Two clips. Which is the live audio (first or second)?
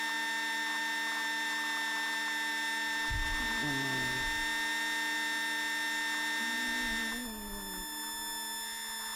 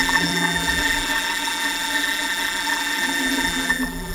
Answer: first